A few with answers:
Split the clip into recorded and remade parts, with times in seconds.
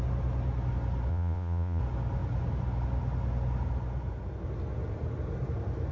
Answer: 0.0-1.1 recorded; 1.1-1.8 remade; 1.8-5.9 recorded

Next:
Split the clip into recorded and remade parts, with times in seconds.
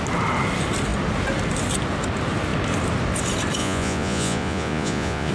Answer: 0.0-3.6 recorded; 3.6-5.3 remade